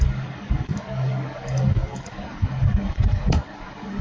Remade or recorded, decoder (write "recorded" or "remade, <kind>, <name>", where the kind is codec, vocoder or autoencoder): remade, codec, DAC